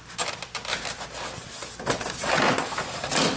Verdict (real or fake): real